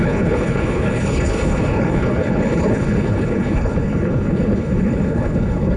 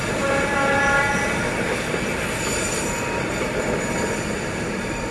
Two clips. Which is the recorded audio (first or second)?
second